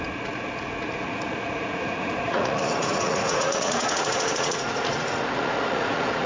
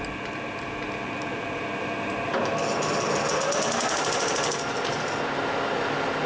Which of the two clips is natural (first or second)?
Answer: second